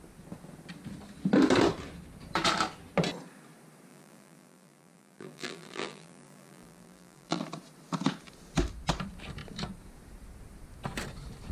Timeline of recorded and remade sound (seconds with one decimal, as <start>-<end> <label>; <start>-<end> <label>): 0.0-3.9 recorded; 3.9-7.4 remade; 7.4-11.5 recorded

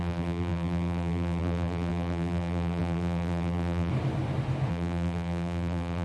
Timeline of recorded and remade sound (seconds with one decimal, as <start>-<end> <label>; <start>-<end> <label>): 0.0-3.9 remade; 3.9-4.7 recorded; 4.7-6.0 remade

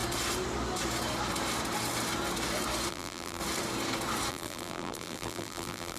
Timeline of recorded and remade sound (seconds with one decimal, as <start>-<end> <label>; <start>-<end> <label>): 0.0-2.9 recorded; 2.9-3.4 remade; 3.4-4.3 recorded; 4.3-6.0 remade

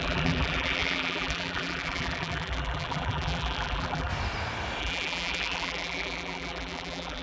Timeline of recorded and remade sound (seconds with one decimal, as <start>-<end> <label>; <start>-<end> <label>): 0.0-4.1 remade; 4.1-4.8 recorded; 4.8-7.2 remade

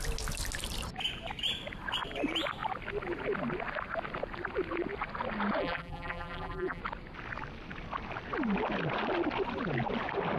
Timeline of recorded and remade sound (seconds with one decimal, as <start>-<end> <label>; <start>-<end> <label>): 0.0-5.6 recorded; 5.6-6.8 remade; 6.8-10.4 recorded

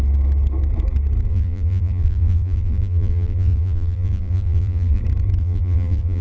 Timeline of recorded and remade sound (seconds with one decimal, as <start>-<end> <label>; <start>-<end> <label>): 0.0-1.3 recorded; 1.3-5.0 remade; 5.0-5.4 recorded; 5.4-6.2 remade

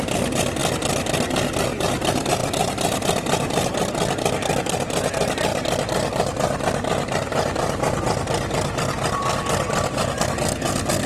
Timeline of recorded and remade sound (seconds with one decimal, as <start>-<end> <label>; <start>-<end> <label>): 0.0-2.4 recorded; 2.4-3.9 remade; 3.9-11.1 recorded

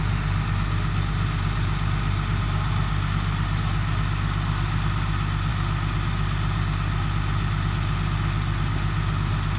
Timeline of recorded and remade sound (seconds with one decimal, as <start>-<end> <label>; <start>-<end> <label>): 0.0-9.6 recorded